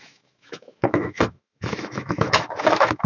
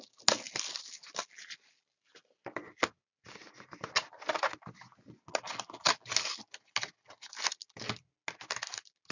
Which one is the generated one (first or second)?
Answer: first